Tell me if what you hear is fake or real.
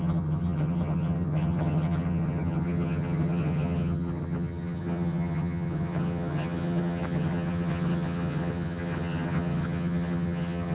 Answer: fake